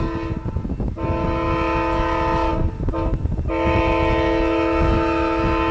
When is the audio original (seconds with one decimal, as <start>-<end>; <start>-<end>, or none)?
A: 0.0-5.7

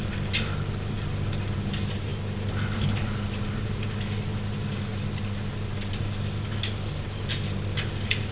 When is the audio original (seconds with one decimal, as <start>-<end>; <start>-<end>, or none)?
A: 0.0-8.3

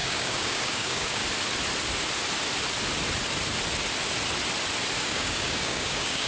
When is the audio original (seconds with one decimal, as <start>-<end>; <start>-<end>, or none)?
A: 1.2-5.0

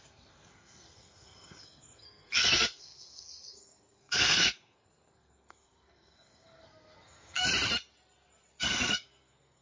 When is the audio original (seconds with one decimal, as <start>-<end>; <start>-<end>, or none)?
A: 7.5-8.6

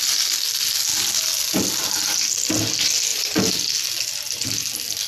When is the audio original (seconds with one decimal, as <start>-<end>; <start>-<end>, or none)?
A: 0.0-5.1

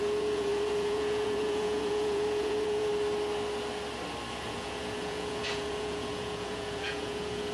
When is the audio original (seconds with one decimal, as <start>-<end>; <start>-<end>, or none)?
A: 2.9-4.3

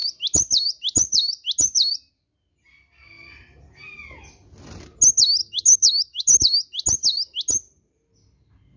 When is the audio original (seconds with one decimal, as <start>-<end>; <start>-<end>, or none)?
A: 0.0-5.4; 6.4-8.8